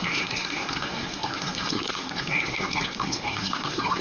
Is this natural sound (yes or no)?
no